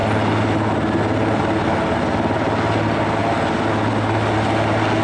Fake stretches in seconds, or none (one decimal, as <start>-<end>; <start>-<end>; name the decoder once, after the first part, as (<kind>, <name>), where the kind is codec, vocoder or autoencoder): none